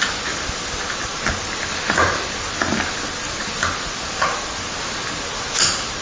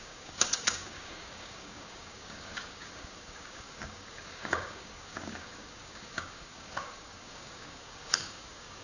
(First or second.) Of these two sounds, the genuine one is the first